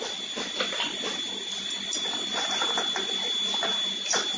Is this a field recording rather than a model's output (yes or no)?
yes